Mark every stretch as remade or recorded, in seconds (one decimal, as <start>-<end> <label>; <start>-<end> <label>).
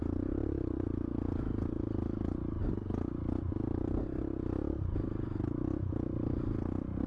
0.0-7.1 recorded